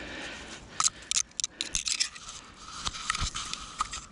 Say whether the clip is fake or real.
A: real